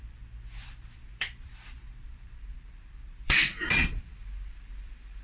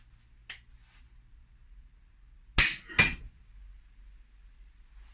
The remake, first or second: first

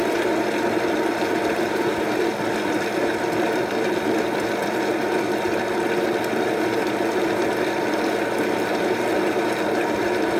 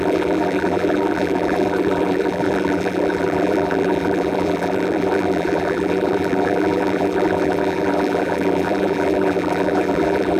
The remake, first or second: second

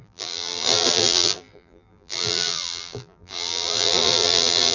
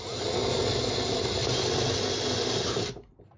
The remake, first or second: first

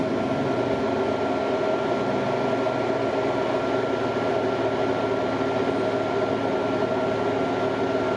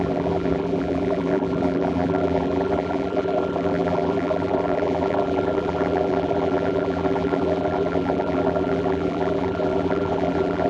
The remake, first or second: second